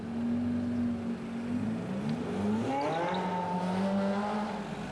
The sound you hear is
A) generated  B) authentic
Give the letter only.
B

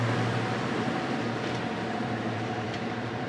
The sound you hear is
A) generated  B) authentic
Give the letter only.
A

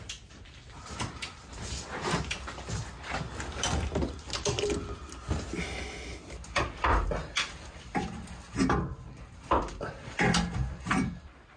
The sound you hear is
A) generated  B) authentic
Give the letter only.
B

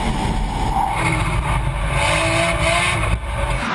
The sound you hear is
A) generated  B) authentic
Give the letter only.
B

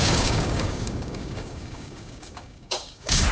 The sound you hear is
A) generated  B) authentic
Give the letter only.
A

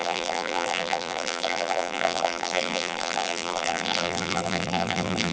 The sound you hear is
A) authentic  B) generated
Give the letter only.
B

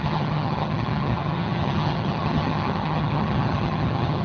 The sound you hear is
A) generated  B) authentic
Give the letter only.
A